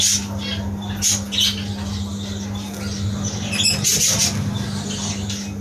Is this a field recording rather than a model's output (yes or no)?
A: yes